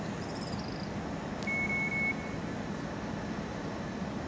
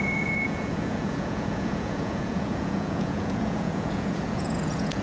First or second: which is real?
first